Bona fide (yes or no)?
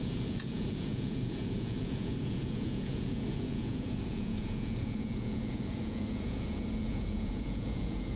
no